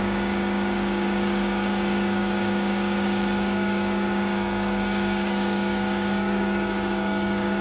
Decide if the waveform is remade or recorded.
remade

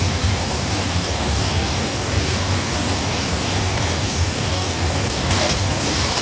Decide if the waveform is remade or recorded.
remade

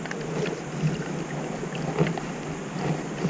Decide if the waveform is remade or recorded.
recorded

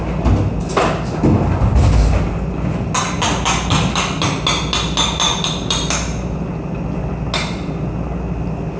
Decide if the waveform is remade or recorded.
recorded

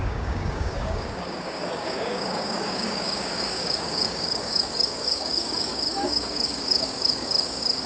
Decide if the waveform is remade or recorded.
remade